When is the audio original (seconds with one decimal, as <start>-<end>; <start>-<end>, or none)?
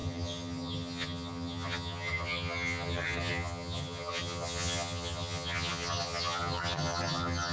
none